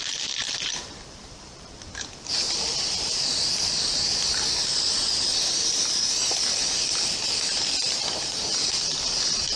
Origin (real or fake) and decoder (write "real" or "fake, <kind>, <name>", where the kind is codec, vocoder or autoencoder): fake, vocoder, BigVGAN v2